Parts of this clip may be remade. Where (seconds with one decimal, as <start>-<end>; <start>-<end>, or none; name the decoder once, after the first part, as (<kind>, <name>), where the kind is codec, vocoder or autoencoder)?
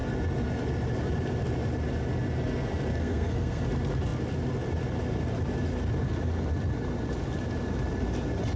2.9-3.6 (codec, SNAC)